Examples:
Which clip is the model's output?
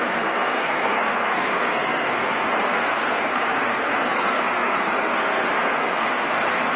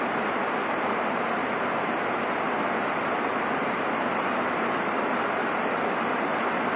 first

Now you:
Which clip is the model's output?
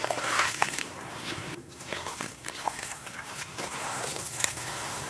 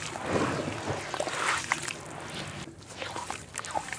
first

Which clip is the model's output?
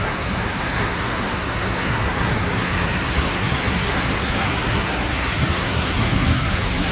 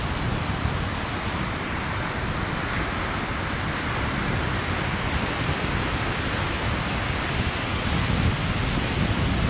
first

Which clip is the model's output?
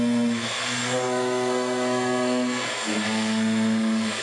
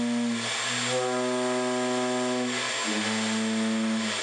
first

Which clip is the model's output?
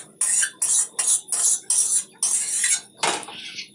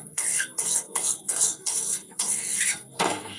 second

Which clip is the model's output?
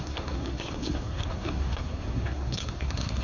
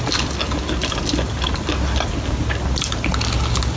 first